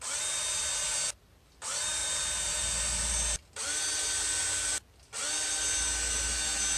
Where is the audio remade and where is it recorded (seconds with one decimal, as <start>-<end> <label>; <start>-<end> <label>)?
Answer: 0.0-6.8 recorded